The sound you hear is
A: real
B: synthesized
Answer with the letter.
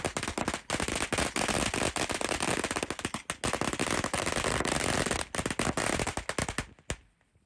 A